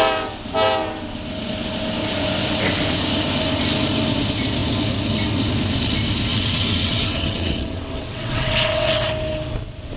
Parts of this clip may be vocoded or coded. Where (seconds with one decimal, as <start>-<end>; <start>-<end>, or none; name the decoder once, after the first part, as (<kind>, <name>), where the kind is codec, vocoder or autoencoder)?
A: 6.3-9.1 (vocoder, WaveNeXt)